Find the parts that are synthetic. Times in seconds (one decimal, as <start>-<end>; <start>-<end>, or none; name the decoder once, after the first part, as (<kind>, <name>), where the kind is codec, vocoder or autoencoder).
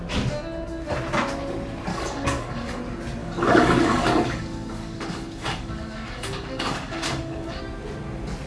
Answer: 1.9-2.8 (codec, DAC); 3.2-7.6